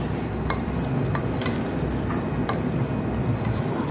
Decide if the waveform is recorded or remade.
remade